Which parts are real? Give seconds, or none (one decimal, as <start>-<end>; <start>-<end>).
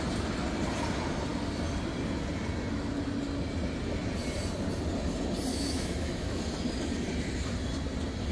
0.0-5.5; 6.4-8.3